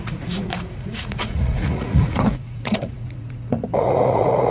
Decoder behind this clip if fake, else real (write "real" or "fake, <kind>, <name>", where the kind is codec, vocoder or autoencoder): fake, vocoder, Vocos